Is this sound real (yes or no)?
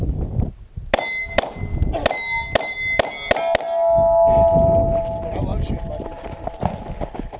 yes